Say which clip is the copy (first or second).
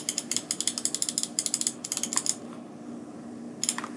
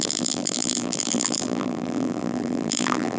second